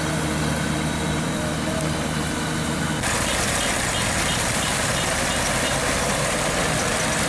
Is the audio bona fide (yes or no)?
yes